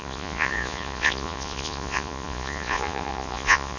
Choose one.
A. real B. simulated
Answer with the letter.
B